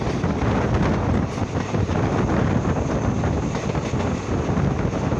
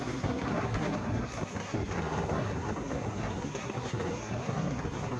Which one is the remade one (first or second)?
second